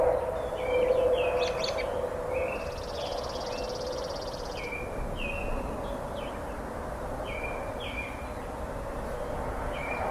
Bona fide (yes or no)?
yes